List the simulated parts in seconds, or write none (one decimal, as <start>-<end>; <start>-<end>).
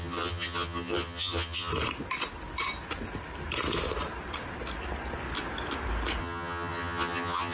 0.0-1.7; 6.2-7.5